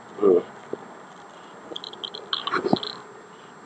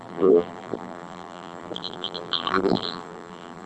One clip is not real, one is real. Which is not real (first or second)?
second